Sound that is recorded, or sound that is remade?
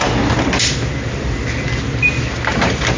recorded